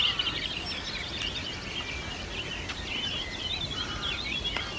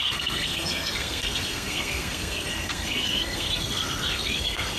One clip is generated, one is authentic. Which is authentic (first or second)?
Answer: first